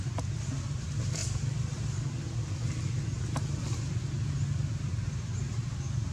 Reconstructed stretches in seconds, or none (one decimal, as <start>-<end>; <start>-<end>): none